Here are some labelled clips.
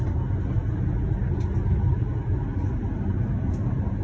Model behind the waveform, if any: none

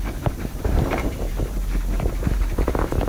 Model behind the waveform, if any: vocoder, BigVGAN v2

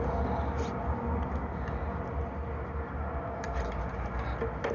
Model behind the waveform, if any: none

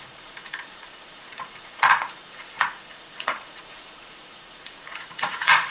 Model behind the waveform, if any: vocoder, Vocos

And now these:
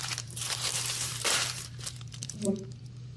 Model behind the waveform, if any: vocoder, BigVGAN v2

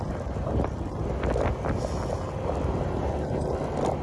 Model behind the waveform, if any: none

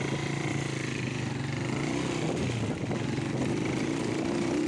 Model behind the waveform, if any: none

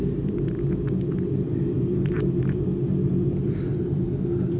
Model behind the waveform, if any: vocoder, BigVGAN v2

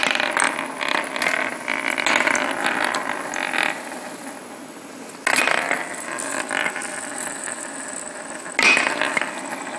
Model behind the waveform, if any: none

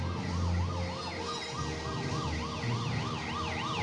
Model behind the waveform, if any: none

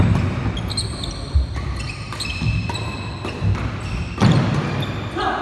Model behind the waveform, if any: none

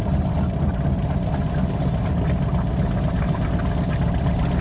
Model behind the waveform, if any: none